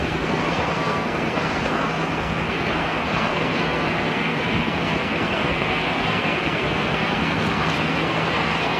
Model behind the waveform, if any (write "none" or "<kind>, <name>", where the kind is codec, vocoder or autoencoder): codec, SNAC